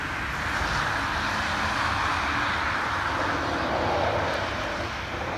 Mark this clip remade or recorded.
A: recorded